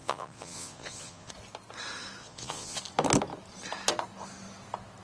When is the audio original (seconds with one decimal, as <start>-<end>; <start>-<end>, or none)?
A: 1.3-2.2; 2.8-5.0